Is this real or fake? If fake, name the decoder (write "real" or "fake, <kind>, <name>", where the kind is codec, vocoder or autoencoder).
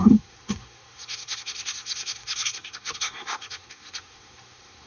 fake, codec, SNAC